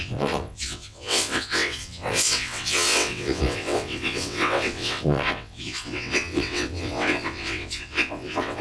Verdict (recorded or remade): remade